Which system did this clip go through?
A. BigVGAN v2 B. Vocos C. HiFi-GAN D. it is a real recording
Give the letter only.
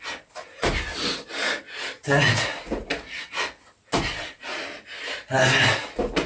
D